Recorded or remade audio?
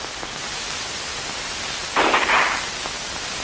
recorded